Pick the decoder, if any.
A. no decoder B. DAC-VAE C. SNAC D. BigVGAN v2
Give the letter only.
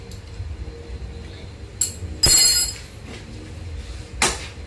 A